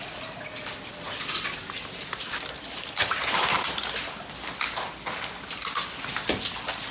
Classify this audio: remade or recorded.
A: recorded